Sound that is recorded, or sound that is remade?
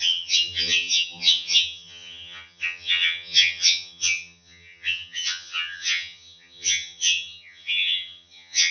remade